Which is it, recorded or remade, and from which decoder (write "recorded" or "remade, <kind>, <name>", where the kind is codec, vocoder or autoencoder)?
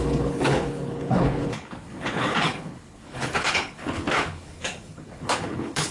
remade, codec, HILCodec